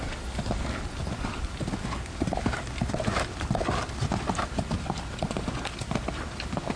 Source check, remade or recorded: recorded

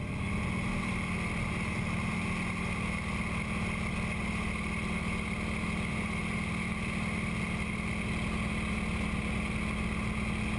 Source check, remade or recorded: recorded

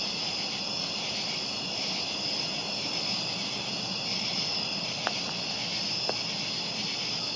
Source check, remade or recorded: recorded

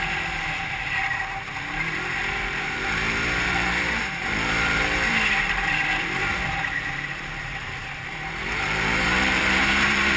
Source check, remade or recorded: remade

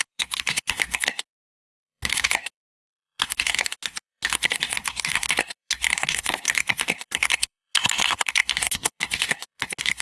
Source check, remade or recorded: remade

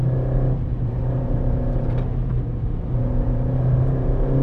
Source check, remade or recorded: remade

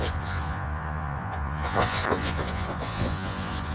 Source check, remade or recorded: remade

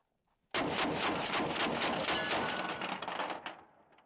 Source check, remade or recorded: recorded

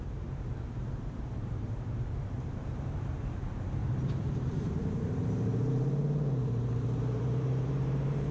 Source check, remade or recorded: remade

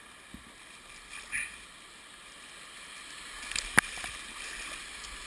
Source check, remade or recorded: recorded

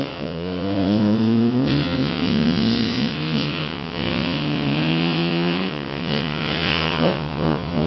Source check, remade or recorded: remade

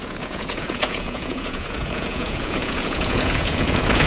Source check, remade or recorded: remade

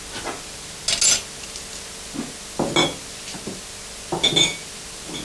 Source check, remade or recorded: recorded